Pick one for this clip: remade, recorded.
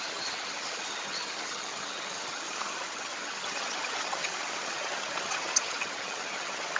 remade